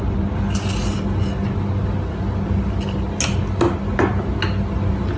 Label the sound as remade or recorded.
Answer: recorded